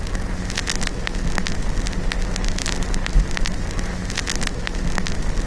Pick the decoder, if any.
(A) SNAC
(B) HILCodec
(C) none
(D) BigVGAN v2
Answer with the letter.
C